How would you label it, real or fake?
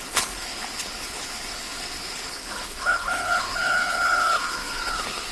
fake